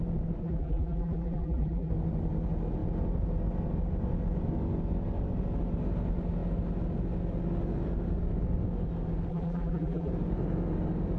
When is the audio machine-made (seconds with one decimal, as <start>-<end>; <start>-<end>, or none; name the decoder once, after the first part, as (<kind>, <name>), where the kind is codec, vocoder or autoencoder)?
0.4-1.9 (vocoder, BigVGAN v2); 9.3-10.1

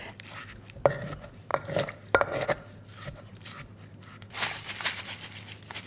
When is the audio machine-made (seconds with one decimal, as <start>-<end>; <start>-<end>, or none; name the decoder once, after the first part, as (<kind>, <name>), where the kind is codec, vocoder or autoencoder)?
none

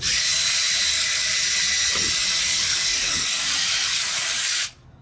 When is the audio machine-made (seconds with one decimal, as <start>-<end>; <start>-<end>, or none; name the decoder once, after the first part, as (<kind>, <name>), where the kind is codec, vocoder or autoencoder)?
0.0-0.4 (codec, DAC); 0.9-1.3; 2.4-5.0

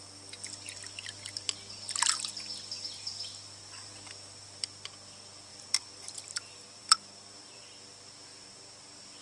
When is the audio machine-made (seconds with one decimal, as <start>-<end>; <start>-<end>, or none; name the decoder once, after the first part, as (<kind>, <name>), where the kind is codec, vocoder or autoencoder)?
5.5-7.6 (vocoder, BigVGAN v2)

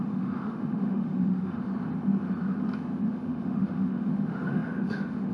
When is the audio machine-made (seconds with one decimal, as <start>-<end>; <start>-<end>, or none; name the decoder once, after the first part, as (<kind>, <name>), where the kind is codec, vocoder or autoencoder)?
0.0-1.7 (autoencoder, DAC-VAE); 3.1-5.3

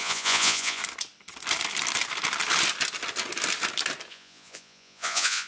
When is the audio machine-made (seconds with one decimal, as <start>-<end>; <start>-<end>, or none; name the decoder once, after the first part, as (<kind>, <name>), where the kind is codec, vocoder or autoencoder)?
0.0-0.8 (vocoder, Vocos); 4.1-5.5